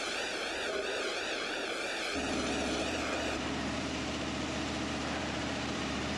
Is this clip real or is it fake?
fake